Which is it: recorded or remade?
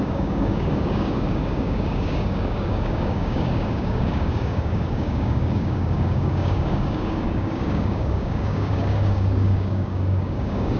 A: remade